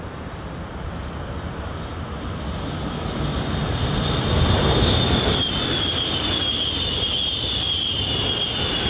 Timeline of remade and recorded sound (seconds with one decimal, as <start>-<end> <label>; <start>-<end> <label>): 0.0-8.9 recorded